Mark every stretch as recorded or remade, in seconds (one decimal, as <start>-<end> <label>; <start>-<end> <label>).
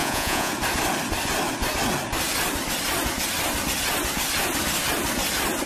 0.0-0.5 remade; 0.5-5.7 recorded